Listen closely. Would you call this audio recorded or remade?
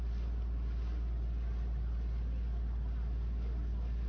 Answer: recorded